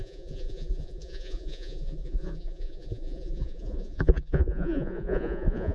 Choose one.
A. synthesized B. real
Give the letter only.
A